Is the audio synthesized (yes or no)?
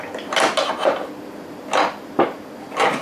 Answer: no